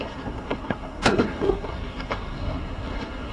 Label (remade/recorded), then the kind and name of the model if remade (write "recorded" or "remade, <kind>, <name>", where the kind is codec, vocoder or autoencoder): remade, codec, SNAC